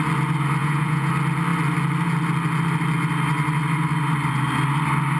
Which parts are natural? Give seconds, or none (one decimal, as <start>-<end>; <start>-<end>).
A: 0.0-0.6; 1.1-5.2